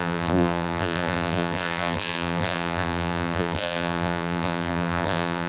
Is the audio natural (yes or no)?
no